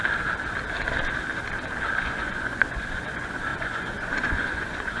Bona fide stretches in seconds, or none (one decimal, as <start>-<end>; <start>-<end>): 0.0-2.0